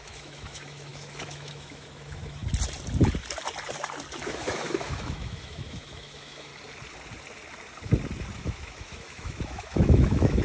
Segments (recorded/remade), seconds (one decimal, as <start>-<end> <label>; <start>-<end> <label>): 0.0-2.4 remade; 2.4-4.2 recorded; 4.2-6.5 remade; 6.5-8.4 recorded; 8.4-10.4 remade